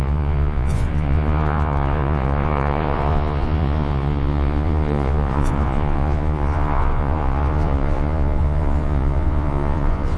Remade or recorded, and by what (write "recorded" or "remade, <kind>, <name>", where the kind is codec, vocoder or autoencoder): remade, vocoder, Vocos